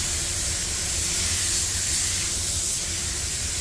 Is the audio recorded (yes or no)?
no